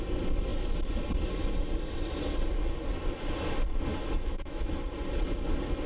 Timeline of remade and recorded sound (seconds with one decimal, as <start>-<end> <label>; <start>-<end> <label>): 0.0-3.9 recorded; 3.9-4.7 remade; 4.7-5.9 recorded